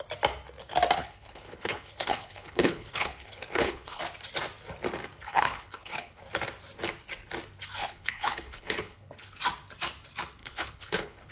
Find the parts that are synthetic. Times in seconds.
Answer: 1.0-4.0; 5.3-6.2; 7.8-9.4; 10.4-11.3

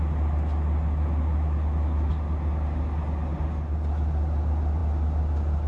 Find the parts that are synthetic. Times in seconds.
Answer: none